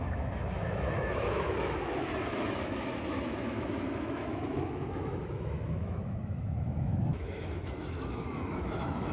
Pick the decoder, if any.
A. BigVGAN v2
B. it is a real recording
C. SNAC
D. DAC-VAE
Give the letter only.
D